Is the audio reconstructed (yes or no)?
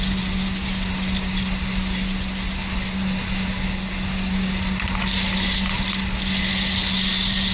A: no